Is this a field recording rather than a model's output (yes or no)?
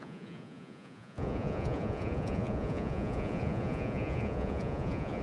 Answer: no